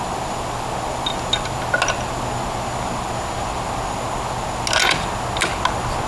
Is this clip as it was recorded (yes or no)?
yes